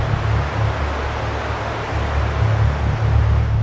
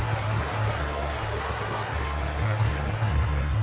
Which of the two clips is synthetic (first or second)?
second